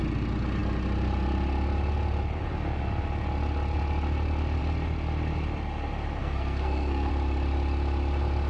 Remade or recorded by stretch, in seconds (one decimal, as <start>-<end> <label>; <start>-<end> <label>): 0.0-6.2 recorded; 6.2-7.1 remade; 7.1-8.5 recorded